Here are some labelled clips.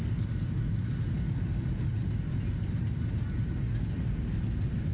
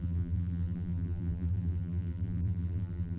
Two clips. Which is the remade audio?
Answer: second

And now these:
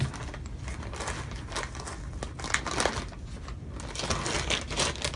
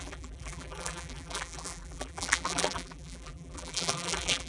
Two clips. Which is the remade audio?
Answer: second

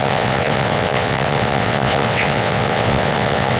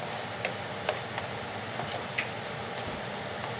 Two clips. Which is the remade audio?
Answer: first